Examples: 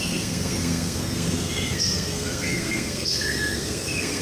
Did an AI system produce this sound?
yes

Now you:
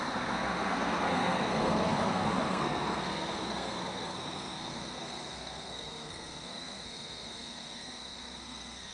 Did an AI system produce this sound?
yes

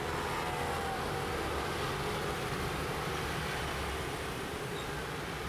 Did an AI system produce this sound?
no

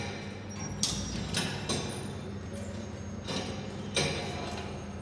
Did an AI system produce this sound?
no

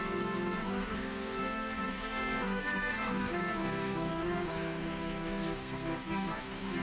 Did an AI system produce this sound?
yes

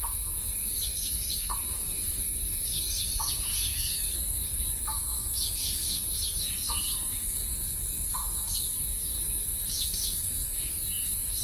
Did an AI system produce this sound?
yes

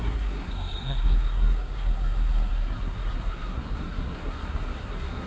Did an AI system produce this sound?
yes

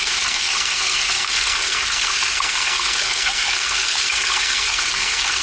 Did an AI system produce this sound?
yes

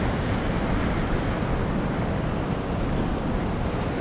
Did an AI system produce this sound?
no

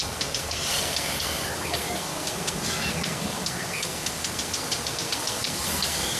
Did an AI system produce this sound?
yes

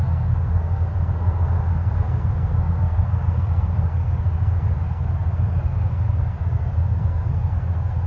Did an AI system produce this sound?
yes